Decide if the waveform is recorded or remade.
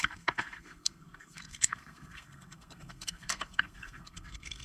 remade